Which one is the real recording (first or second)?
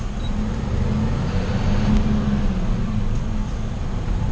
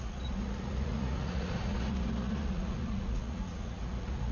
first